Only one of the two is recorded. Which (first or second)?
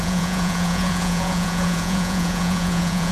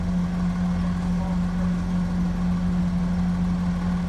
second